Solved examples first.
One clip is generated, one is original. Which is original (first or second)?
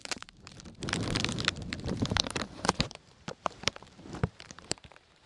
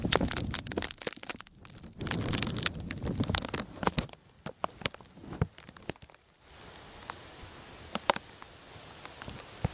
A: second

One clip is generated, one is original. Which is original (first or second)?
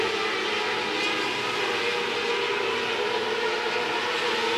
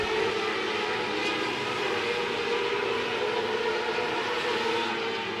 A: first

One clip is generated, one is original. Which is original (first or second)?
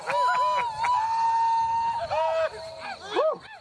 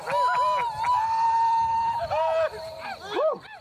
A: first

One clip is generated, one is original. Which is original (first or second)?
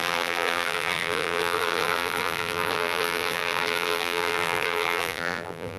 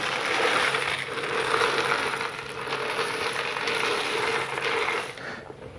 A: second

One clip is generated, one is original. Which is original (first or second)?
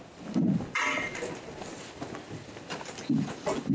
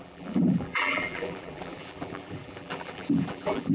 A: first